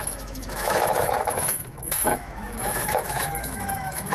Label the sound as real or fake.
fake